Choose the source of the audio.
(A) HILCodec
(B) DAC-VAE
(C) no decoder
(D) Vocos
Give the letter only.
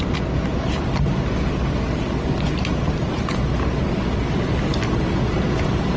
C